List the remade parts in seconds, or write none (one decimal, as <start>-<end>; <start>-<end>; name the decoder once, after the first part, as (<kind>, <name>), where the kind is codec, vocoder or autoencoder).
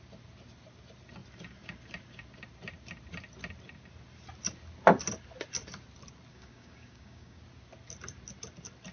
6.3-7.4 (codec, DAC)